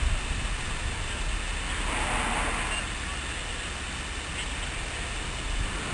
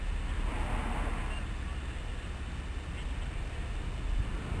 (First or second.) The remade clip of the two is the second